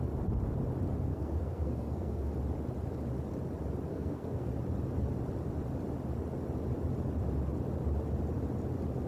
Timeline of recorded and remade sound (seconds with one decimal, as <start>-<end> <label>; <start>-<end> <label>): 0.0-1.1 recorded; 1.1-2.3 remade; 2.3-3.9 recorded; 3.9-4.5 remade; 4.5-9.1 recorded